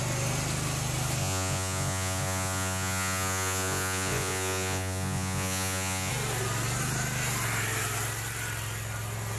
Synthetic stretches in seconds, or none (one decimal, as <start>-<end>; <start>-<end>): 1.2-6.1